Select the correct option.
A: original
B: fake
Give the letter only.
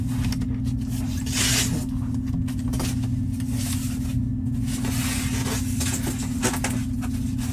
A